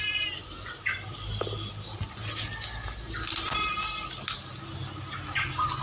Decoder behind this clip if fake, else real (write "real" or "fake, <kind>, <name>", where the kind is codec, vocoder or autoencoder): real